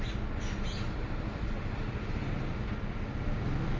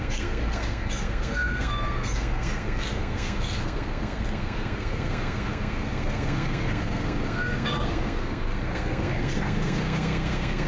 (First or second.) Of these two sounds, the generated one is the second